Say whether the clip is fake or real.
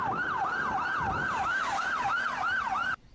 real